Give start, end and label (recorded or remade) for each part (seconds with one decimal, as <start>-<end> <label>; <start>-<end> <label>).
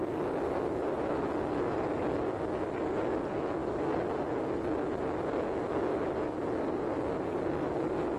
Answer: 0.0-8.2 recorded